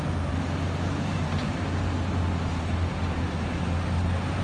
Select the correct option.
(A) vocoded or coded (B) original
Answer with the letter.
B